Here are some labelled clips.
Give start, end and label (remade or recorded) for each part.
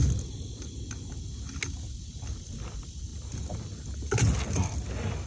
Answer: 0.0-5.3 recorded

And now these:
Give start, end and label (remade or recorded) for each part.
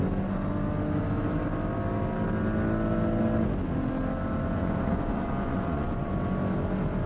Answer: 0.0-4.6 recorded; 4.6-6.1 remade; 6.1-7.1 recorded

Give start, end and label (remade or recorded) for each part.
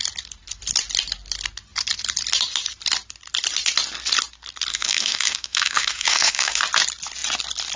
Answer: 0.0-4.7 recorded; 4.7-6.6 remade; 6.6-7.8 recorded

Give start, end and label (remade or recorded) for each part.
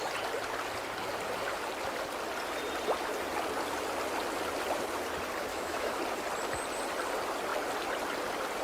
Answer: 0.0-5.5 recorded; 5.5-6.0 remade; 6.0-8.6 recorded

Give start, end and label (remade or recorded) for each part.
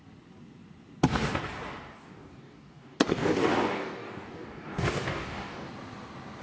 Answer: 0.0-1.9 recorded; 1.9-5.7 remade; 5.7-6.4 recorded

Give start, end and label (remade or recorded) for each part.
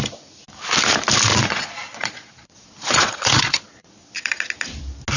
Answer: 0.0-1.3 recorded; 1.3-4.3 remade; 4.3-5.2 recorded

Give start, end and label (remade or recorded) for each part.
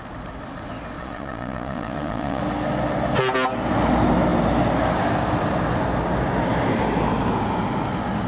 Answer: 0.0-1.0 recorded; 1.0-2.4 remade; 2.4-8.3 recorded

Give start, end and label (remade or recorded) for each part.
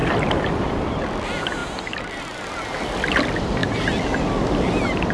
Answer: 0.0-5.1 recorded